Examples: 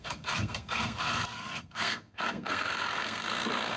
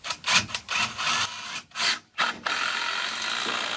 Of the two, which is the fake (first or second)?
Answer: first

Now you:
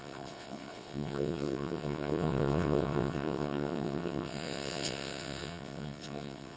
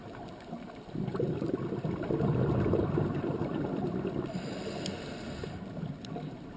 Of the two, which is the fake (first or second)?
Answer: first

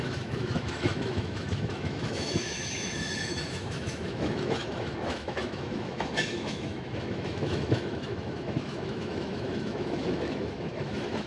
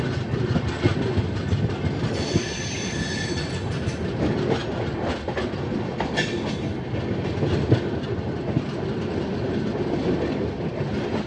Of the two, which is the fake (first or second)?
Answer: first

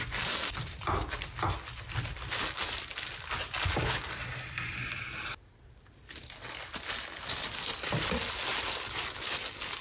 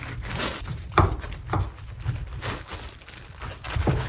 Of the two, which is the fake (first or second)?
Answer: second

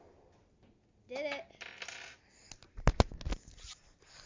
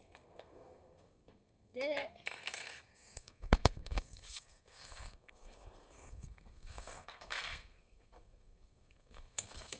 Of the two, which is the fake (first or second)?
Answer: second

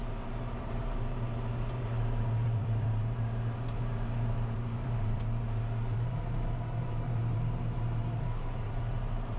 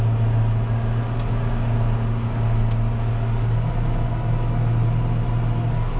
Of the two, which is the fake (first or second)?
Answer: first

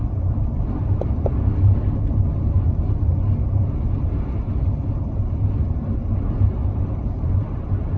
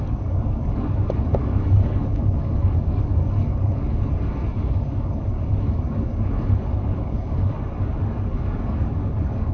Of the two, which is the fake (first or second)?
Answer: second